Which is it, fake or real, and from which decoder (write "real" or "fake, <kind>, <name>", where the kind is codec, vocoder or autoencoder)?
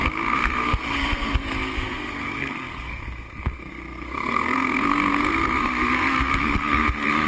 fake, codec, SNAC